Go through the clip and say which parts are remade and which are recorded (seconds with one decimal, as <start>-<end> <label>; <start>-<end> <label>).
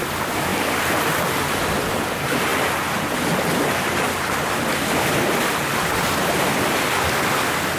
0.0-7.8 recorded